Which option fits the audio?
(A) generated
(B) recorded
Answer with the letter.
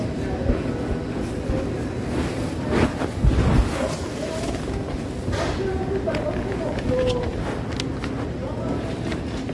B